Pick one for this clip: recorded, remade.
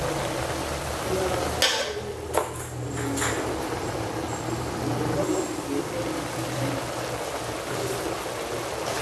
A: recorded